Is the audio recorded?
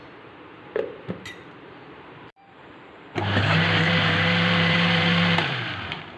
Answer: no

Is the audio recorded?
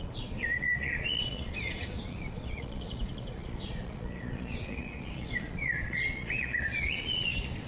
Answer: no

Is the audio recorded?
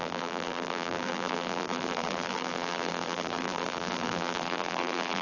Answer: no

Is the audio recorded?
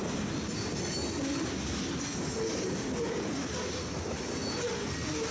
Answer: yes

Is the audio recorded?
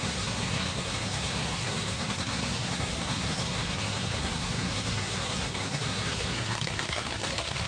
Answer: no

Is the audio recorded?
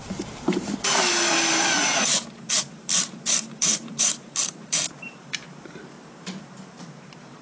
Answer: no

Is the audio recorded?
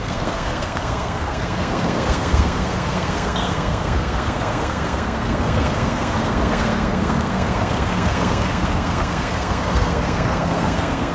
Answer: no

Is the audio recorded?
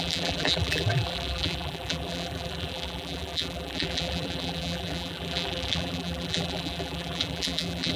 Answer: no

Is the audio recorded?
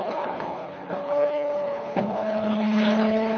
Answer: no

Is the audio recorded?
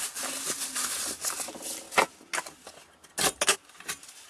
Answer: yes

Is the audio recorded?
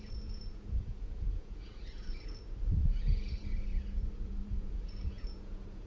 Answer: no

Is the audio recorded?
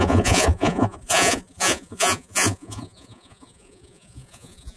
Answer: no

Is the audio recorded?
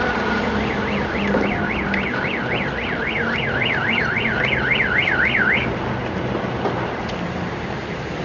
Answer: yes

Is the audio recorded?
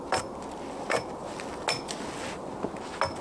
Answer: yes